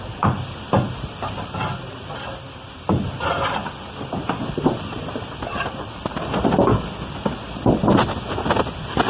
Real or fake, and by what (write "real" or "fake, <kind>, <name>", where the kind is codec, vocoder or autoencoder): real